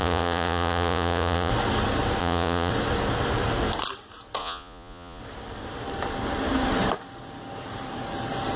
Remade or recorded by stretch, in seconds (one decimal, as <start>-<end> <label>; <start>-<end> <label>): 0.0-1.5 remade; 1.5-2.2 recorded; 2.2-2.7 remade; 2.7-4.4 recorded; 4.4-5.2 remade; 5.2-8.6 recorded

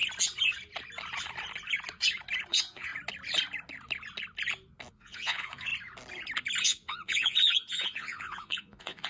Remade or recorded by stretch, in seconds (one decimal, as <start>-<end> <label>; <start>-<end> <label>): 0.0-2.5 recorded; 2.5-2.9 remade; 2.9-4.9 recorded; 4.9-5.7 remade; 5.7-6.6 recorded; 6.6-9.1 remade

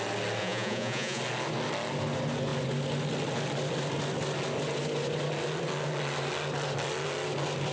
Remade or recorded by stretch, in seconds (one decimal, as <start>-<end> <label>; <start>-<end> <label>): 0.0-0.4 recorded; 0.4-1.2 remade; 1.2-7.7 recorded

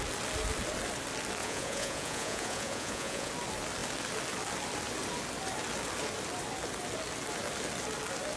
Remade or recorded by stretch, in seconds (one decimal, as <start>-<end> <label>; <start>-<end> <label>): 0.0-1.4 recorded; 1.4-3.3 remade; 3.3-8.4 recorded

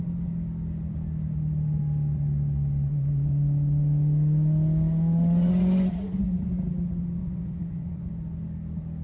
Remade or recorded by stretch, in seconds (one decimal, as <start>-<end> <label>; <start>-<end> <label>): 0.0-7.2 recorded; 7.2-8.1 remade; 8.1-9.0 recorded

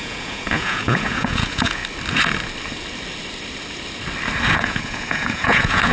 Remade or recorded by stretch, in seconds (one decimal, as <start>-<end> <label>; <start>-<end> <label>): 0.0-1.8 remade; 1.8-4.5 recorded; 4.5-5.9 remade

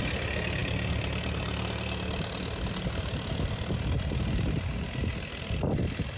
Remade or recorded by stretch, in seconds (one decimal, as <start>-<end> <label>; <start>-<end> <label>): 0.0-6.2 recorded